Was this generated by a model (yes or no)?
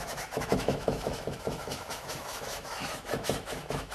yes